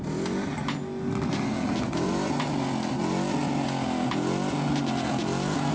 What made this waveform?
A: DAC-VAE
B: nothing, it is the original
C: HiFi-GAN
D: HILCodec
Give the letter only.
B